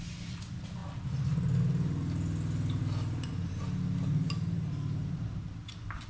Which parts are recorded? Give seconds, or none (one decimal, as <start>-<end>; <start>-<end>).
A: 0.0-6.1